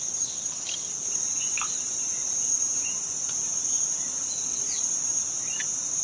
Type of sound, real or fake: real